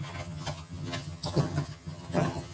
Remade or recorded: remade